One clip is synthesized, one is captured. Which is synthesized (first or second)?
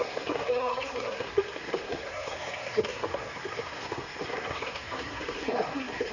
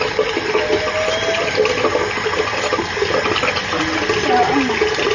first